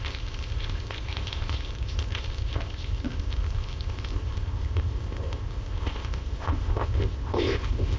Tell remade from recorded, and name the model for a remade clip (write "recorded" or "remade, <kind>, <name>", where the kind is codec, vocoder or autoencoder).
remade, codec, ZipCodec